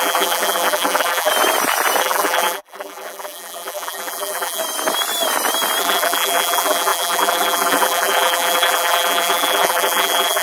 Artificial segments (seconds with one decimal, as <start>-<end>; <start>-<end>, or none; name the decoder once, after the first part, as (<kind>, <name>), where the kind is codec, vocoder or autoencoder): 0.0-1.3 (vocoder, BigVGAN v2); 2.0-4.6; 5.8-10.4